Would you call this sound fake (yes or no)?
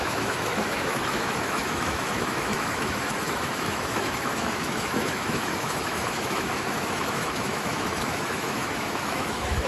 yes